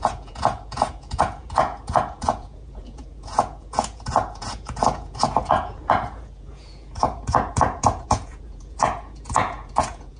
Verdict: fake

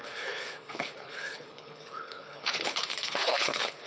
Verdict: fake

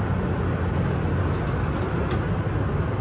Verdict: real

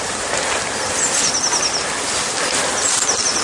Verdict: real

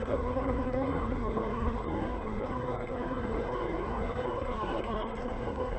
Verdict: fake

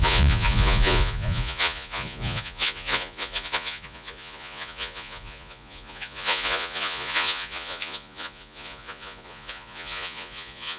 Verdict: fake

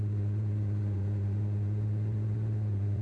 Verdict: fake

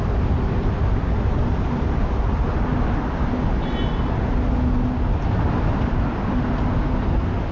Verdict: real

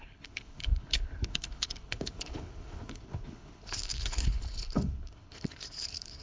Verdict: fake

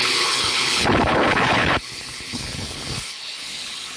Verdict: fake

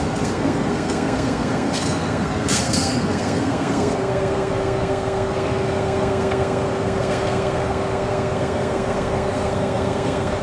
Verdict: fake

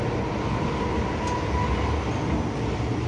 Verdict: real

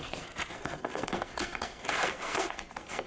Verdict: fake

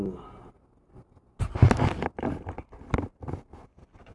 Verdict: real